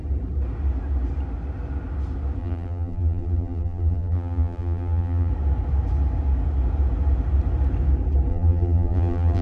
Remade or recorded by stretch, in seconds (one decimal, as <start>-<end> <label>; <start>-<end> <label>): 0.0-2.4 recorded; 2.4-5.3 remade; 5.3-8.3 recorded; 8.3-9.4 remade